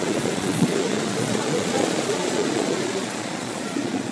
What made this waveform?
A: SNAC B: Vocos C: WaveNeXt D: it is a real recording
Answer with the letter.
B